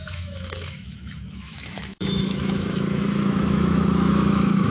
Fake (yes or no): yes